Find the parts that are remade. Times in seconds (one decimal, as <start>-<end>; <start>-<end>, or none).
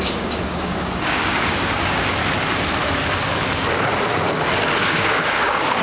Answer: 0.0-2.2; 4.8-5.8